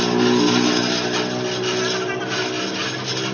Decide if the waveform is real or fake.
real